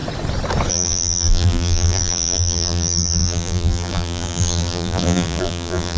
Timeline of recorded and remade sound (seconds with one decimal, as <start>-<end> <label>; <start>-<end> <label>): 0.0-0.7 recorded; 0.7-6.0 remade